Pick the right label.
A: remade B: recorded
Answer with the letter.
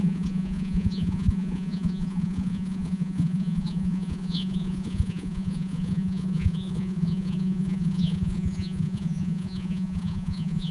A